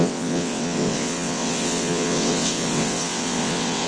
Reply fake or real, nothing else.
fake